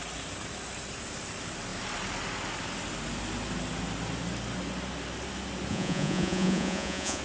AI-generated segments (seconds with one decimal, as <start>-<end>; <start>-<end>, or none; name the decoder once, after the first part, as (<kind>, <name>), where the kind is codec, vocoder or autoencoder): 5.7-7.2 (vocoder, Vocos)